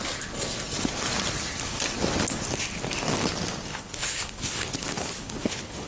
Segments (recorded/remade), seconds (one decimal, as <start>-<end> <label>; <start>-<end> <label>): 0.0-3.7 recorded; 3.7-5.9 remade